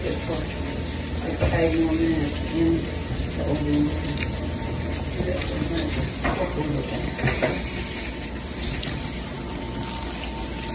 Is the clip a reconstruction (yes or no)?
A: no